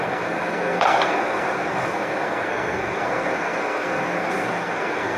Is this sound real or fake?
fake